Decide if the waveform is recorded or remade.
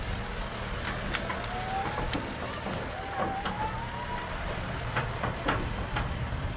recorded